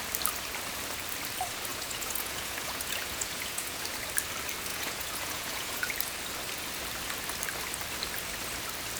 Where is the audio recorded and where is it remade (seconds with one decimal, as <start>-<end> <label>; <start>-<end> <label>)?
0.0-1.7 recorded; 1.7-3.8 remade; 3.8-4.7 recorded; 4.7-5.9 remade; 5.9-9.0 recorded